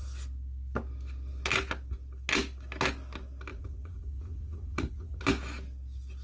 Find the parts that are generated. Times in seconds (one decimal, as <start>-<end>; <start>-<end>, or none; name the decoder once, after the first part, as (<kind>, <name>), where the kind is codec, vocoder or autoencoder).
3.5-5.2 (vocoder, Vocos)